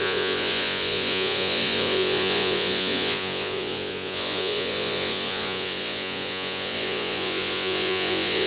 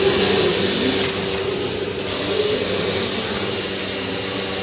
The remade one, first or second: first